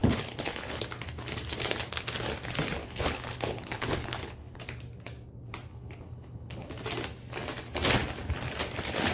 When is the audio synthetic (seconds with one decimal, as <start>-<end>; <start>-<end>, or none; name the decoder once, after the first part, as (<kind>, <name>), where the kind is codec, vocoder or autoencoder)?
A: 0.0-0.8 (codec, HILCodec); 2.8-4.6; 5.7-6.7